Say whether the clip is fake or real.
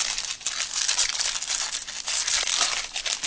real